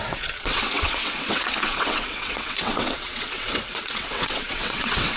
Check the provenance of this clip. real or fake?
fake